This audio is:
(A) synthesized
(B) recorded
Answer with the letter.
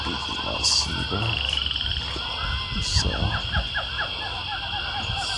B